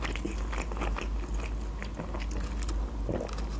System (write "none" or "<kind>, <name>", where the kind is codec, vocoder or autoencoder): none